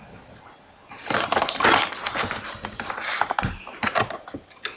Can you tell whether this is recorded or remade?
recorded